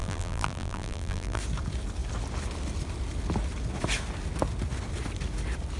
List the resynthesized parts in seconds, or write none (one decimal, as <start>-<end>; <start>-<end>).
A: 0.0-1.4